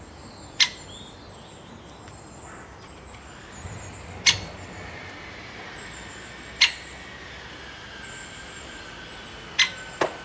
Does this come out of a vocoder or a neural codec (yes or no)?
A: no